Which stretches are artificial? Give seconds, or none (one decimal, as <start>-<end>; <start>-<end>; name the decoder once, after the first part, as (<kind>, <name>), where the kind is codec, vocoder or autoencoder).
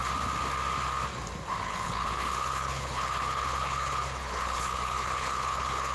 1.6-5.9 (codec, HILCodec)